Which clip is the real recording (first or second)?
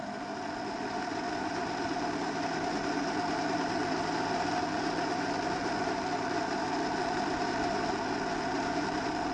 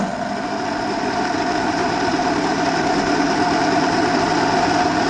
first